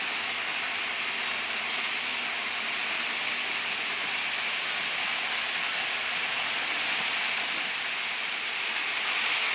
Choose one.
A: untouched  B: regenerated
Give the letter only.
A